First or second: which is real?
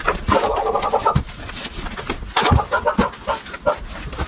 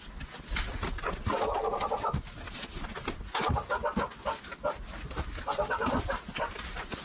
second